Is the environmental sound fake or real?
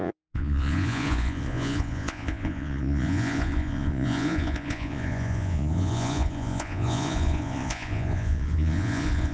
fake